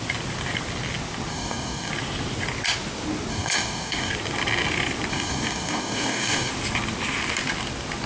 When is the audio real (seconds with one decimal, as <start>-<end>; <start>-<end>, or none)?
0.0-1.3; 1.9-3.3; 4.1-5.1; 6.5-8.1